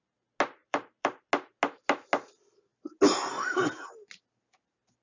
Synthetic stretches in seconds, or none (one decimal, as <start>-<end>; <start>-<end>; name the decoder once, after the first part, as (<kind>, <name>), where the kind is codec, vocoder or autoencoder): 0.6-1.3 (vocoder, BigVGAN v2)